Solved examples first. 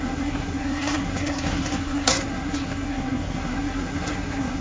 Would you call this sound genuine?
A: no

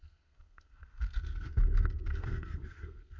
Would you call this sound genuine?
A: no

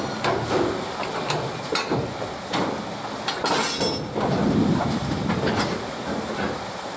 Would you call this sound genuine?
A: yes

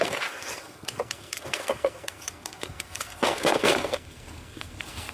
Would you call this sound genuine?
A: no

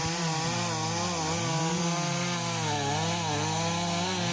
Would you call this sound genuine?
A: yes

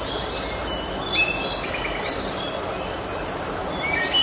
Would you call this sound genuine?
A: yes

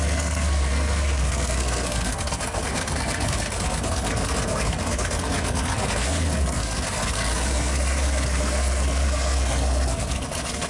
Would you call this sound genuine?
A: no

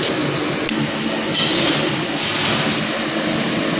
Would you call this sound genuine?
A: yes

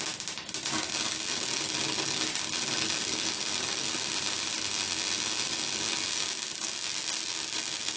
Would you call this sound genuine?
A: yes